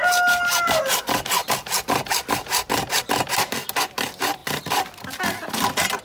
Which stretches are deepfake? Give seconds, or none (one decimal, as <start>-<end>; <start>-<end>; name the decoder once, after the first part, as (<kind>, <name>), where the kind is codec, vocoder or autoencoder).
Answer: none